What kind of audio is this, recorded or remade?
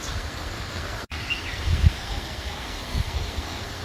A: remade